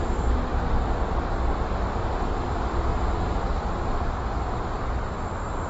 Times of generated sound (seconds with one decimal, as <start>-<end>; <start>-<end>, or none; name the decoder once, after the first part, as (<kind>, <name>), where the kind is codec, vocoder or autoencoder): 0.0-2.9 (vocoder, BigVGAN v2); 4.0-5.7